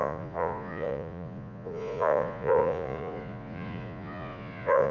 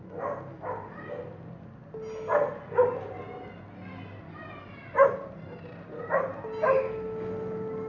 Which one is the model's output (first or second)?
first